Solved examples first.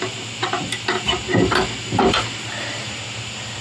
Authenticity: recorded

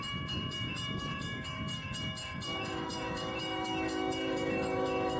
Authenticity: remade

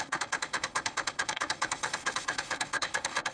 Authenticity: remade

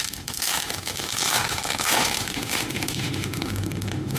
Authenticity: remade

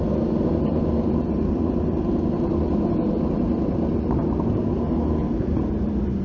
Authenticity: recorded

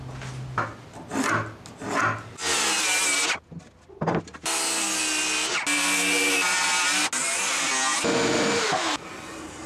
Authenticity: recorded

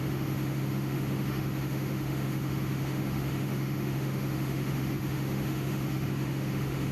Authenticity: remade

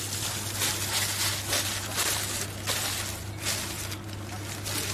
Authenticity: recorded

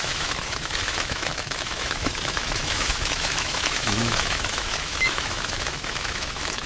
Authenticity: remade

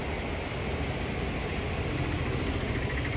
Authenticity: recorded